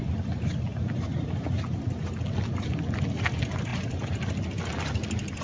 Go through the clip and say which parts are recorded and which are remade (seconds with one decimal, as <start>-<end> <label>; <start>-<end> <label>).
0.0-5.4 recorded